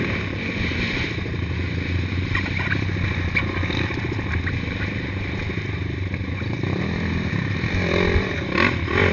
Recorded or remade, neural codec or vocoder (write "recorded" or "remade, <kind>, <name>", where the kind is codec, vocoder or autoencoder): recorded